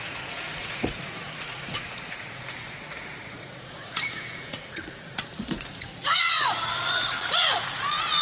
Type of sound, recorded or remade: remade